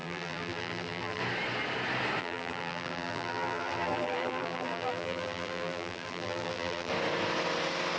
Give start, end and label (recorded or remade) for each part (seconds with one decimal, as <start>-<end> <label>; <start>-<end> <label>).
0.0-1.2 remade; 1.2-2.2 recorded; 2.2-6.9 remade; 6.9-8.0 recorded

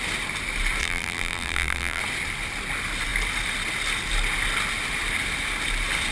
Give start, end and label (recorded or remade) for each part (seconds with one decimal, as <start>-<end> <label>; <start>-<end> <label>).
0.0-0.8 recorded; 0.8-2.0 remade; 2.0-6.1 recorded

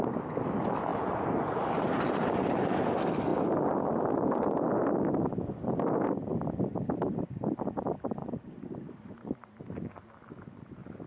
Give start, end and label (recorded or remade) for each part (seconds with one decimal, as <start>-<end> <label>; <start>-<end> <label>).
0.0-0.9 recorded; 0.9-2.2 remade; 2.2-8.2 recorded; 8.2-9.6 remade; 9.6-11.1 recorded